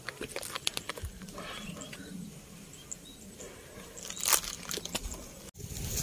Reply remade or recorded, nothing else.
recorded